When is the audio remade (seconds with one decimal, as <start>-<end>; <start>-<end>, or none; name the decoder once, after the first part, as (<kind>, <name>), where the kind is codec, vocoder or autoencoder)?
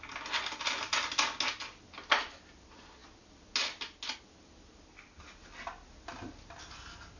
none